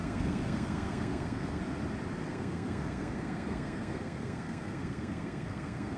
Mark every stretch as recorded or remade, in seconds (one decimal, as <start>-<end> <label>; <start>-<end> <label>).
0.0-1.6 remade; 1.6-2.2 recorded; 2.2-6.0 remade